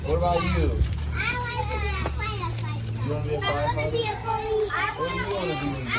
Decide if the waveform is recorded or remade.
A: recorded